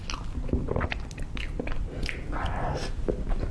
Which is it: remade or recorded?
recorded